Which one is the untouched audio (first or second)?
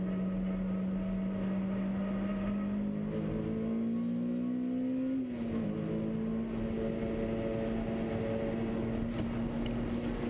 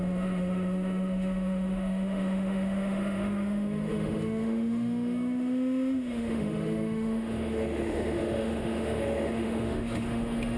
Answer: first